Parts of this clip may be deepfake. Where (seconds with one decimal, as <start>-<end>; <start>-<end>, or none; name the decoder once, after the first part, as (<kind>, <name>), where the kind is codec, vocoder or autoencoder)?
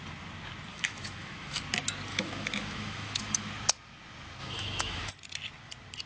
0.7-1.6 (autoencoder, DAC-VAE); 2.1-3.5; 4.4-5.1